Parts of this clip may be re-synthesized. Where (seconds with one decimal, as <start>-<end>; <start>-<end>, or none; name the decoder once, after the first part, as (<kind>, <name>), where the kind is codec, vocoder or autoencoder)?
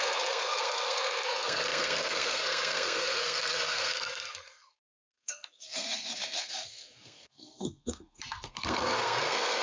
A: 0.0-9.6 (codec, SNAC)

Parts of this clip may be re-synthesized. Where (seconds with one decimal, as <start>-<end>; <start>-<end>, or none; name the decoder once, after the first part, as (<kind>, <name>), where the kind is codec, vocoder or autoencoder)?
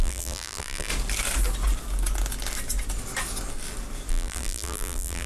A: 0.0-0.9 (vocoder, BigVGAN v2); 4.1-5.3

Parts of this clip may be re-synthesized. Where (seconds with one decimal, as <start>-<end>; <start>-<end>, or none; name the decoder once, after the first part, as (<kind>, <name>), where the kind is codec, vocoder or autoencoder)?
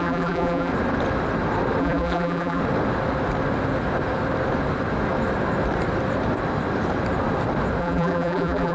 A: 0.0-0.7 (vocoder, BigVGAN v2); 1.8-2.6; 7.8-8.7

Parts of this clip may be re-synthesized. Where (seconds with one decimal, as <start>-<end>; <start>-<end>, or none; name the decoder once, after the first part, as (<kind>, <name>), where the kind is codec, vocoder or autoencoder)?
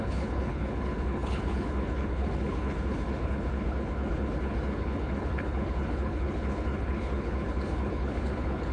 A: 0.0-8.7 (codec, HILCodec)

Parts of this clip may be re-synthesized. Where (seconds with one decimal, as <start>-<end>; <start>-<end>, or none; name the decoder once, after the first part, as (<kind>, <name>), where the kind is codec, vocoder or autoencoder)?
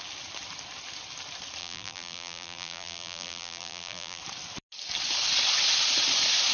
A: 1.6-4.2 (vocoder, BigVGAN v2)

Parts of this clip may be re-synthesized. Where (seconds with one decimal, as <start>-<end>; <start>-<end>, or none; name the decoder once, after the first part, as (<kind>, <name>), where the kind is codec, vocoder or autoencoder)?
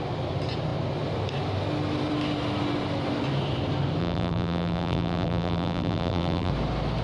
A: 4.0-6.5 (vocoder, BigVGAN v2)